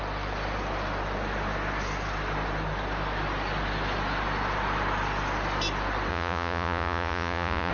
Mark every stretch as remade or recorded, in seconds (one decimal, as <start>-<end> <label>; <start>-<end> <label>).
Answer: 0.0-6.1 recorded; 6.1-7.7 remade